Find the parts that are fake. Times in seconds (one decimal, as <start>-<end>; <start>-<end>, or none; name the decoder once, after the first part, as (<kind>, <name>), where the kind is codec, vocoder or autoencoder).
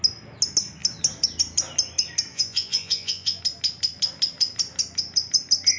2.3-3.4 (vocoder, Vocos)